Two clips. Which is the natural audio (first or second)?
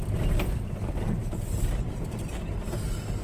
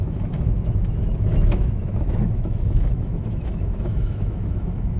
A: first